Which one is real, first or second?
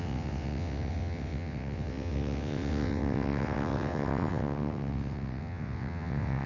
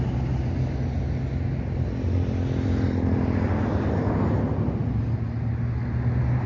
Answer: second